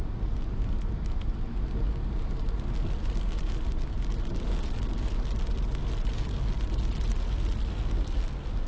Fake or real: real